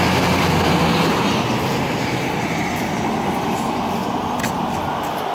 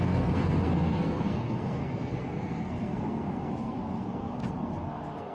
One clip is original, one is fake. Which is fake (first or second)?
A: second